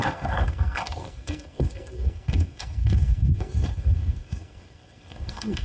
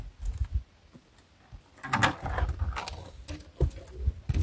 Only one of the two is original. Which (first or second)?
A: second